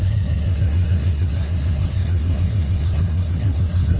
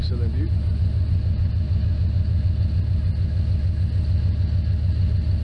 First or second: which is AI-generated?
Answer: first